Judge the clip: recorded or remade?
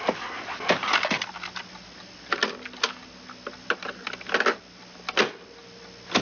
recorded